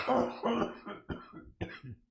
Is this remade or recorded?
recorded